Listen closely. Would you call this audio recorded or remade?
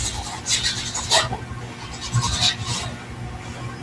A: recorded